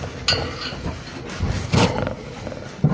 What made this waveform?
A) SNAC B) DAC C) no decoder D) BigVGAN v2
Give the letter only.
C